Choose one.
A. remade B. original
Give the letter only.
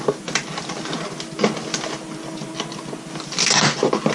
B